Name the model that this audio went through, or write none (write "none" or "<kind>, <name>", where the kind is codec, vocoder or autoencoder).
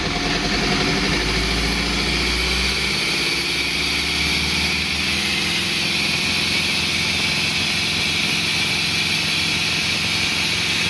none